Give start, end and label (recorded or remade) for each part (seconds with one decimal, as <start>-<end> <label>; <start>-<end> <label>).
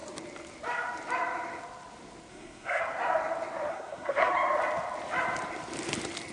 0.0-2.3 recorded; 2.3-2.8 remade; 2.8-3.7 recorded; 3.7-4.3 remade; 4.3-6.3 recorded